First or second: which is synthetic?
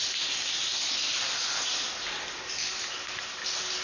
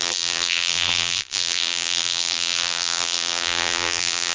second